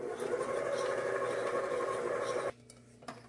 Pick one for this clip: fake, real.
real